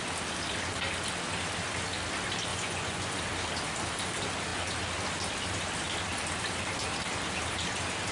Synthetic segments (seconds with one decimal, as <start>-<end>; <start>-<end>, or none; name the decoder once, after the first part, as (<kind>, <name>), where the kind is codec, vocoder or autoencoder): 2.5-3.2 (vocoder, Vocos)